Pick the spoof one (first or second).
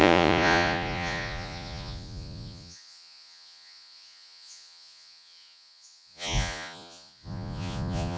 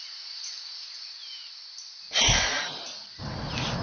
first